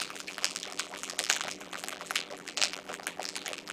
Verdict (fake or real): fake